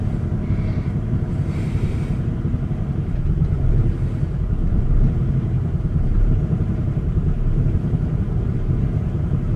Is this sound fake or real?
fake